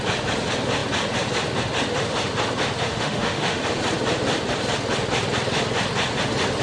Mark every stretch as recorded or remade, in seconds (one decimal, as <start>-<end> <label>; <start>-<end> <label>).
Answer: 0.0-2.9 recorded; 2.9-3.6 remade; 3.6-6.6 recorded